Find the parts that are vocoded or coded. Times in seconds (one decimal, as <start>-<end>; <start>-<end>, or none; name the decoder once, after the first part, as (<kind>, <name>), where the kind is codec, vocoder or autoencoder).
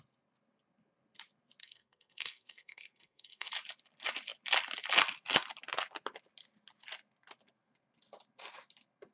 1.6-3.5 (codec, SNAC)